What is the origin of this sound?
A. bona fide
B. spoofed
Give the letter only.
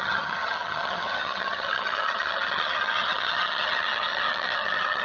B